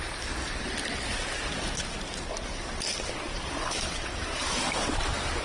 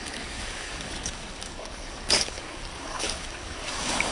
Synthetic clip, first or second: second